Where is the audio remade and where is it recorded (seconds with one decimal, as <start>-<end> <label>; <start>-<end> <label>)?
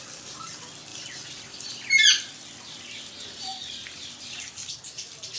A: 0.0-0.9 recorded; 0.9-1.7 remade; 1.7-3.5 recorded; 3.5-4.5 remade; 4.5-5.4 recorded